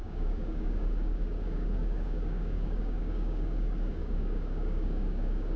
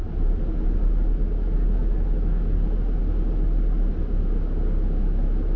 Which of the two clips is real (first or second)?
second